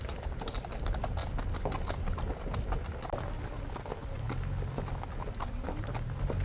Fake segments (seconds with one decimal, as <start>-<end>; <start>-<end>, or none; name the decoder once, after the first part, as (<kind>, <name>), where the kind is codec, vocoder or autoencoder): 0.0-1.2 (vocoder, BigVGAN v2); 3.1-4.0; 5.1-6.4

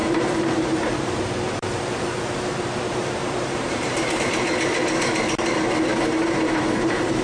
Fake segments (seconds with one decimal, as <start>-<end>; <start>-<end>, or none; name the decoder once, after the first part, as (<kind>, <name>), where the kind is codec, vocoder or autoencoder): 0.0-4.2 (vocoder, BigVGAN v2); 5.9-7.2

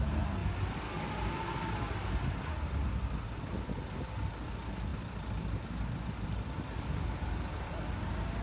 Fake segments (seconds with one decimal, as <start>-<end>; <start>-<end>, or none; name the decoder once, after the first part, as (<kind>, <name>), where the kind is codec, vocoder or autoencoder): none

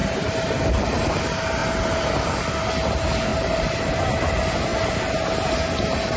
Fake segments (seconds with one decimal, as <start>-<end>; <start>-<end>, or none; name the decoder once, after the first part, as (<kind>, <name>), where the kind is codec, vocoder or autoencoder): 0.0-0.6 (vocoder, BigVGAN v2); 3.3-3.8

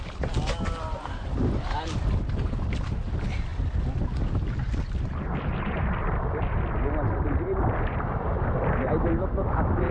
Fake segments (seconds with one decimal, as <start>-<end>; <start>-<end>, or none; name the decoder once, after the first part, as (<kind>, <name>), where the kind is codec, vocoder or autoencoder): none

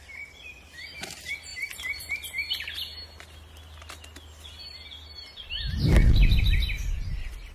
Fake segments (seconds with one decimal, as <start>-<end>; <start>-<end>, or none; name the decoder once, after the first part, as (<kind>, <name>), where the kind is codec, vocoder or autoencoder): 1.5-2.1 (vocoder, BigVGAN v2)

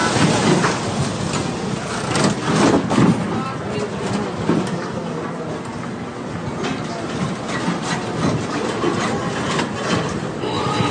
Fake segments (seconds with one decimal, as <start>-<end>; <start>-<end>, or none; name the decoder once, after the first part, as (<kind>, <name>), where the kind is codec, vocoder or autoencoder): 6.9-7.5 (vocoder, BigVGAN v2)